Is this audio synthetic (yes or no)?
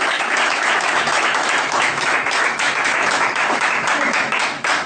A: yes